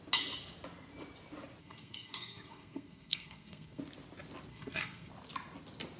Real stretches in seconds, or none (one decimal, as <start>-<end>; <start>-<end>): 0.0-1.6; 3.8-4.5; 5.1-6.0